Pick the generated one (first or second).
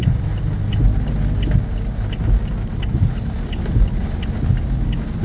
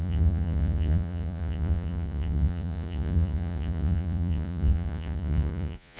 second